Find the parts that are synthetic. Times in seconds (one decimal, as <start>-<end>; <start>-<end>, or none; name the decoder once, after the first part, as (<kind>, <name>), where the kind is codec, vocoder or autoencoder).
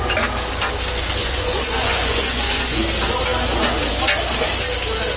1.2-2.8 (vocoder, Vocos)